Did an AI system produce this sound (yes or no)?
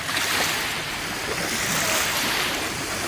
no